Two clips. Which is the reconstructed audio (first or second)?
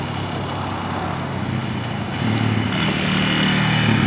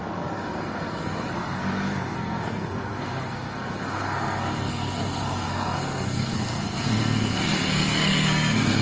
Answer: second